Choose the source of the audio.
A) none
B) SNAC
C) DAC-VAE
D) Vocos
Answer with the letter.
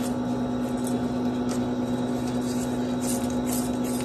A